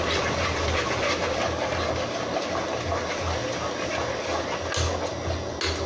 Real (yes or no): yes